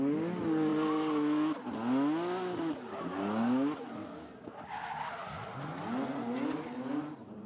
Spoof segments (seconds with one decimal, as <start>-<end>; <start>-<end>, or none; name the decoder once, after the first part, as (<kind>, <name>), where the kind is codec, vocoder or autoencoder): none